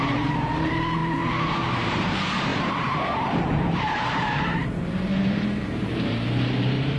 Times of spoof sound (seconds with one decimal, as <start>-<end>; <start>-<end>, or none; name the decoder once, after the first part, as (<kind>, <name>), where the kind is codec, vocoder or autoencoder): 0.0-1.0 (vocoder, BigVGAN v2); 1.9-7.0